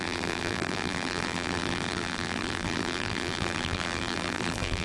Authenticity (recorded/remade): remade